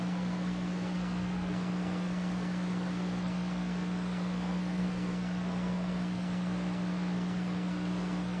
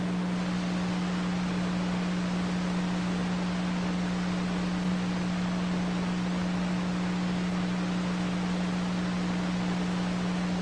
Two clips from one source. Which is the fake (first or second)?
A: first